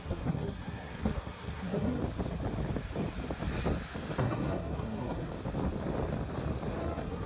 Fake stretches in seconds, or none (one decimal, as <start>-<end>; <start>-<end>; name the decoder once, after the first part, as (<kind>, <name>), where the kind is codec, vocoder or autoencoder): 0.0-2.0 (codec, SNAC); 4.2-5.3; 6.8-7.3